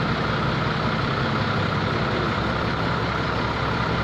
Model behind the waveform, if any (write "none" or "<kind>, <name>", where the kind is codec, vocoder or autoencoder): none